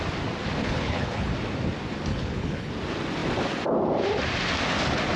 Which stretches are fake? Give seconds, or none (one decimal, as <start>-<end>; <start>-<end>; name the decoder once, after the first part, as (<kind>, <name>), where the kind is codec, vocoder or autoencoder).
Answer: 0.6-1.3 (codec, HILCodec); 2.1-2.7